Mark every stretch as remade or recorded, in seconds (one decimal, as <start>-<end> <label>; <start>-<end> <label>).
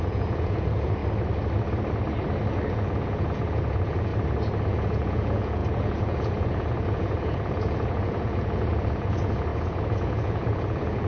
0.0-1.0 remade; 1.0-2.7 recorded; 2.7-4.1 remade; 4.1-4.7 recorded; 4.7-11.1 remade